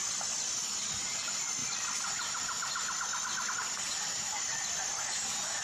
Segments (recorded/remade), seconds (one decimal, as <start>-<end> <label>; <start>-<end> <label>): 0.0-5.6 recorded